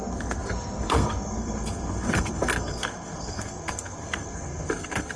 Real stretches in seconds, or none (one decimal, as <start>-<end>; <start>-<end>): none